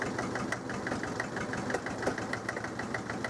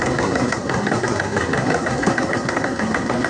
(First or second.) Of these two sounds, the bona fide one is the first